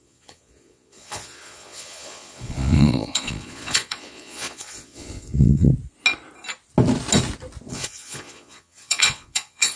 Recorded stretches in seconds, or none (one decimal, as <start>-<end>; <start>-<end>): 5.7-7.7